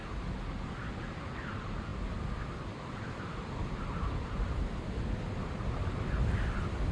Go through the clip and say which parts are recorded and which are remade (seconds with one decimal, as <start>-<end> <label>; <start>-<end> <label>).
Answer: 0.0-6.9 recorded